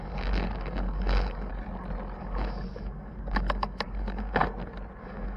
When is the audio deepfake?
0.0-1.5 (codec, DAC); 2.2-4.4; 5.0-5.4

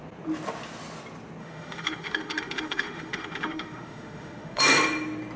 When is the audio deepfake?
1.4-4.6 (autoencoder, DAC-VAE)

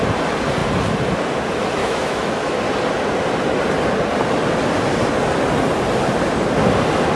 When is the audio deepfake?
1.8-2.6 (autoencoder, DAC-VAE)

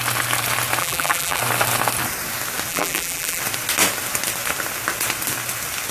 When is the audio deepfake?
0.8-1.4 (vocoder, BigVGAN v2); 2.7-3.4

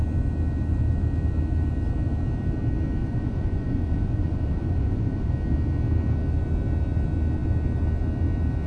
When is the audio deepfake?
3.0-5.3 (vocoder, Vocos)